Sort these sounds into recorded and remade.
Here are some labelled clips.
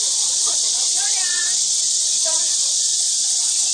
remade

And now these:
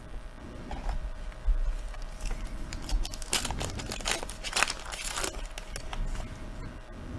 recorded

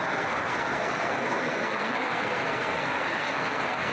remade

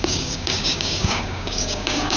remade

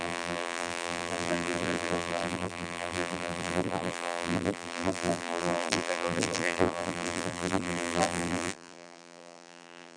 remade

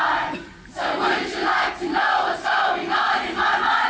recorded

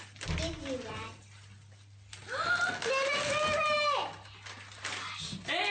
recorded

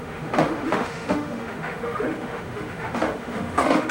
remade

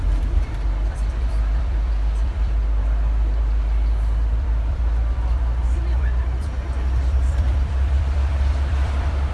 remade